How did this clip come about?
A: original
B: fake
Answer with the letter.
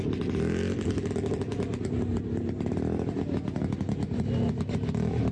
A